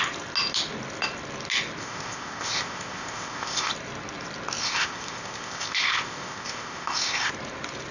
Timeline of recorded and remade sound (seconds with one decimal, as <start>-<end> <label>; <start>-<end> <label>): 0.0-1.8 recorded; 1.8-3.7 remade; 3.7-4.6 recorded; 4.6-7.3 remade; 7.3-7.9 recorded